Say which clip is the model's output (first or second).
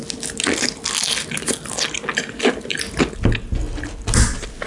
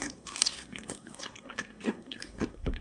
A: second